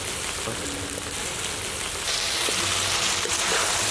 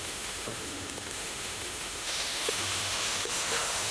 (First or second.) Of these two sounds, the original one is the first